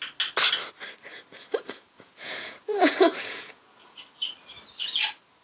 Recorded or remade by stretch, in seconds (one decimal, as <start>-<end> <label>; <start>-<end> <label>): 0.0-1.1 recorded; 1.1-4.0 remade; 4.0-5.4 recorded